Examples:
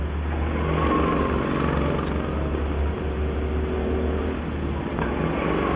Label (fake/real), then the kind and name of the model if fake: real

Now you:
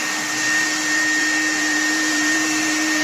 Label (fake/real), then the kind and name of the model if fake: fake, vocoder, BigVGAN v2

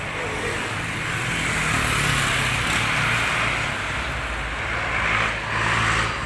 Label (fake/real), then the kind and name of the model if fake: real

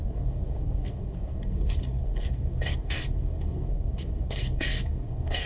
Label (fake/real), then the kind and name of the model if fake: fake, codec, SNAC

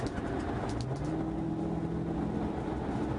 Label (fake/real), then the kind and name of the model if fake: real